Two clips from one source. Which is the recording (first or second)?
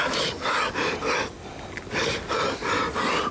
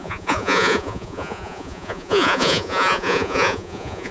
first